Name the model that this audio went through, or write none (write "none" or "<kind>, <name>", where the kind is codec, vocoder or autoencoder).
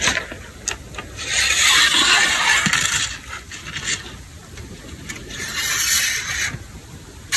none